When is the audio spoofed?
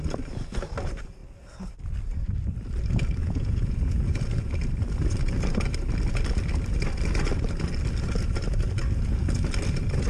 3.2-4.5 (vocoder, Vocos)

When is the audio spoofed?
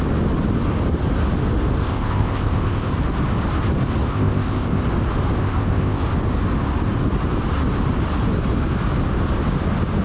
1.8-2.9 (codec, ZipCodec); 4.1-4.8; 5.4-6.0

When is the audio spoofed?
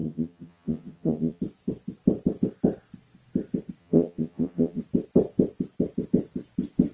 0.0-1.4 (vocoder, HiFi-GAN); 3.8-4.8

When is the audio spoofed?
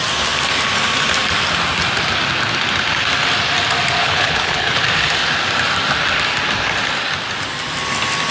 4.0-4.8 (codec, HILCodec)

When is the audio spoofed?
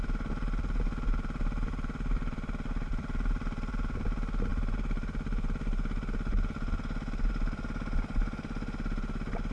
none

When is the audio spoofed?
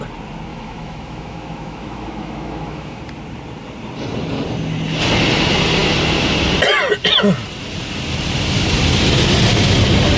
0.5-3.0 (autoencoder, DAC-VAE)